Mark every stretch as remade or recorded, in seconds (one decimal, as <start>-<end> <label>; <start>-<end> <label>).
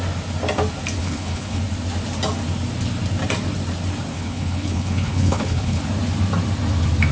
0.0-1.0 recorded; 1.0-1.6 remade; 1.6-4.1 recorded; 4.1-5.8 remade; 5.8-7.1 recorded